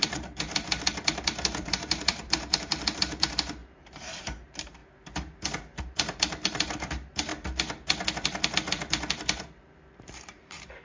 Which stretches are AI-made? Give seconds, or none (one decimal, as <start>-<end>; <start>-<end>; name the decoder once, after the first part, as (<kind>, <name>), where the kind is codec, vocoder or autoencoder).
0.0-4.8 (vocoder, BigVGAN v2); 5.8-7.3; 9.9-10.8